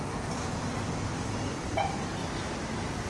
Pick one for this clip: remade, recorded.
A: recorded